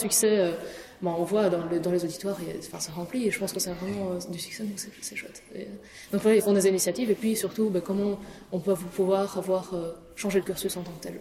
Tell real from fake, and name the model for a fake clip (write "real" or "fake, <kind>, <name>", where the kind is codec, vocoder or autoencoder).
real